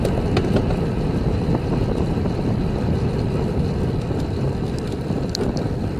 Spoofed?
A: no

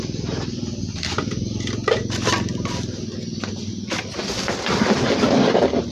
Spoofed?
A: no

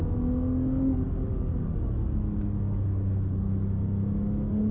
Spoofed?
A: no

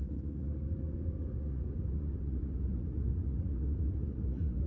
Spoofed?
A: yes